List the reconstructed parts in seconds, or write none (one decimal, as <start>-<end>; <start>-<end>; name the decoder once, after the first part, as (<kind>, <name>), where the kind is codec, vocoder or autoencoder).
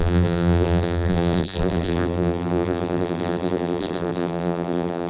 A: 0.0-5.1 (vocoder, BigVGAN v2)